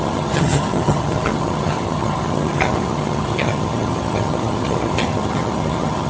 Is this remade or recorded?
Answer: remade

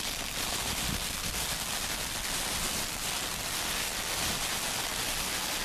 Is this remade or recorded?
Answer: recorded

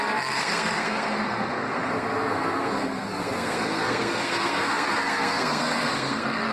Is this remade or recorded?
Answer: remade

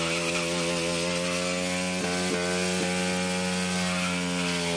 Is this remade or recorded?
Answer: recorded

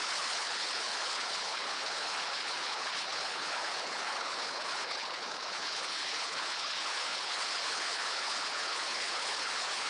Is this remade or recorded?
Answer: remade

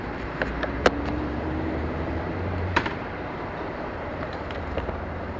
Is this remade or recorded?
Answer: remade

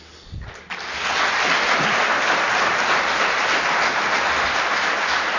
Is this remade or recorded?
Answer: recorded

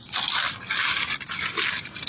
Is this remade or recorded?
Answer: recorded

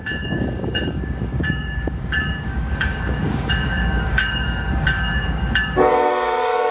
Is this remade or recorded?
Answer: remade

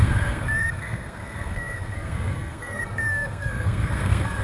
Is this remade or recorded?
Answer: remade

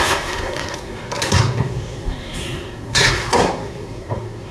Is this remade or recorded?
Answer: remade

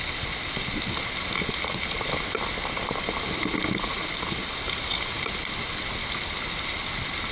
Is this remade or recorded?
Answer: recorded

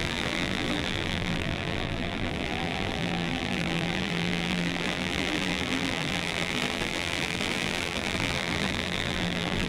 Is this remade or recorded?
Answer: remade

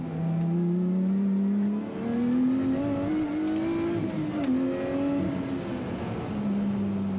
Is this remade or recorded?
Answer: recorded